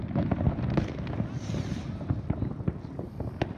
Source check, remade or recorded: recorded